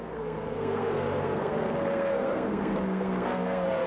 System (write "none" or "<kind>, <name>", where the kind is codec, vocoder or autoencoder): codec, SNAC